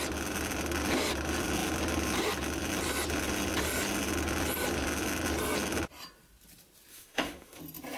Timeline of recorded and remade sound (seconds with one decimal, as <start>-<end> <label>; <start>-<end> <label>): 0.0-6.9 recorded; 6.9-7.6 remade; 7.6-8.0 recorded